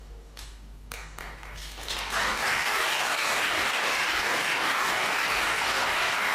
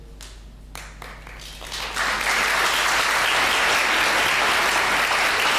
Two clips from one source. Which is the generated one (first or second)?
first